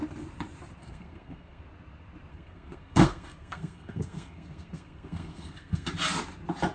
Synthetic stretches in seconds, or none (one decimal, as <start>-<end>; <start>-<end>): 0.8-1.6; 2.3-5.9